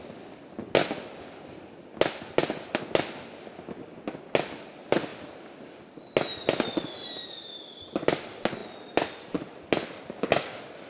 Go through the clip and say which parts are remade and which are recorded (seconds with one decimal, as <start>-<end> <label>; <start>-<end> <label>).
0.0-10.9 recorded

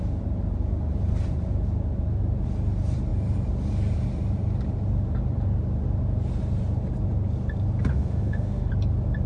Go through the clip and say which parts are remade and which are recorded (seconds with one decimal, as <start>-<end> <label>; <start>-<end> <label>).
0.0-7.9 recorded; 7.9-8.7 remade; 8.7-9.3 recorded

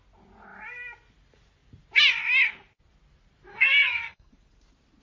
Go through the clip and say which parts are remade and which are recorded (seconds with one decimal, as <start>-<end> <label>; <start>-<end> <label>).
0.0-3.5 recorded; 3.5-4.3 remade; 4.3-5.0 recorded

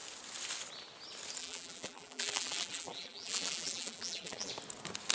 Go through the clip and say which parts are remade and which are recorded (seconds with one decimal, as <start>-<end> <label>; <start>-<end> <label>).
0.0-1.4 recorded; 1.4-4.5 remade; 4.5-5.1 recorded

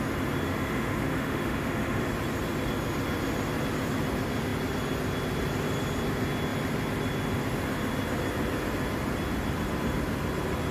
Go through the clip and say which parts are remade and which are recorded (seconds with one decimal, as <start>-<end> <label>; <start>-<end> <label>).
0.0-0.4 recorded; 0.4-2.0 remade; 2.0-10.7 recorded